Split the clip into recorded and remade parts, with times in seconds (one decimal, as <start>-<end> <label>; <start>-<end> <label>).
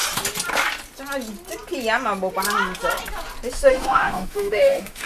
0.0-3.7 recorded; 3.7-5.1 remade